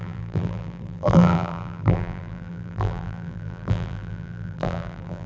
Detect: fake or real fake